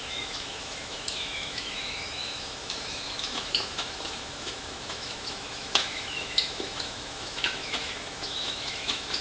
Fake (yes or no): yes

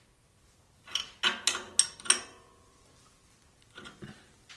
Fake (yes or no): no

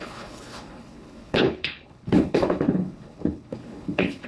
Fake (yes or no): yes